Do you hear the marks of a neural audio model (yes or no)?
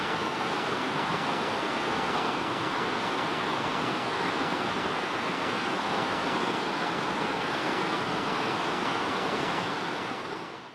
yes